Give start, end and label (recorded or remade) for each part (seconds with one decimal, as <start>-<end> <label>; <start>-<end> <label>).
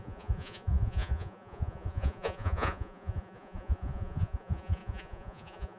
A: 0.0-5.8 remade